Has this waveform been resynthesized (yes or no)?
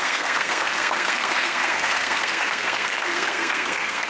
yes